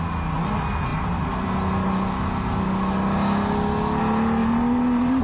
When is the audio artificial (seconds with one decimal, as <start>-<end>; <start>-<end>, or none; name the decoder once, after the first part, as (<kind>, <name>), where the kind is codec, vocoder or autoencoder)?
4.4-5.2 (vocoder, BigVGAN v2)